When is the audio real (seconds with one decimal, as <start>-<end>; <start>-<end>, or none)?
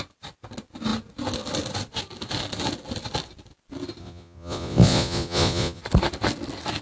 0.0-4.0; 5.8-6.8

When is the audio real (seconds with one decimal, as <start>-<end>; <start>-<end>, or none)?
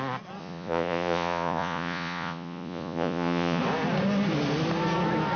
0.0-0.4; 3.6-5.4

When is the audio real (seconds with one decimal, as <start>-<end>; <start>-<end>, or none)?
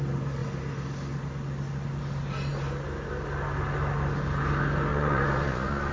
0.0-4.9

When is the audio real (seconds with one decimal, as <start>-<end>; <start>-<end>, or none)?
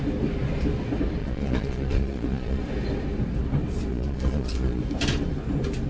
0.0-1.2; 2.6-3.9; 4.8-5.9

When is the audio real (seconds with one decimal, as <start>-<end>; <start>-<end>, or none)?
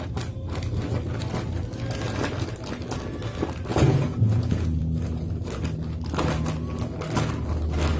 0.0-3.7; 4.8-8.0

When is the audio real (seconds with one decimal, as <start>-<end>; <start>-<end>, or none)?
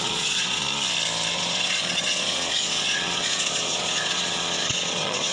0.6-1.3